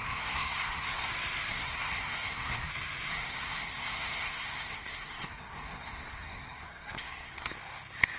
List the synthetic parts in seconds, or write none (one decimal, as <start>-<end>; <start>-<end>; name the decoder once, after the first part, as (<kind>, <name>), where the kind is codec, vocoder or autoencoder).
0.0-1.1 (codec, SNAC); 1.5-2.7; 3.1-7.5